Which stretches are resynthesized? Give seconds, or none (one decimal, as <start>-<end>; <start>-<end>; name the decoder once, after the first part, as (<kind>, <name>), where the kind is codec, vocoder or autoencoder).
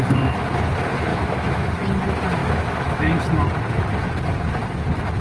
1.1-1.7 (autoencoder, DAC-VAE); 2.4-3.2